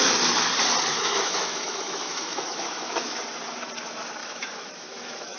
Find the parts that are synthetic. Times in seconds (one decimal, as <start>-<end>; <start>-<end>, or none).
0.9-3.2; 4.2-5.4